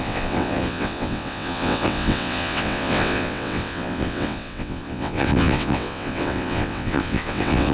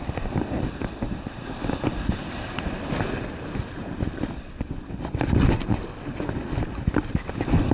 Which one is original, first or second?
second